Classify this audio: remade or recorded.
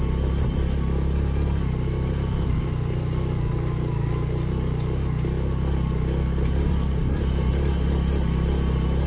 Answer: recorded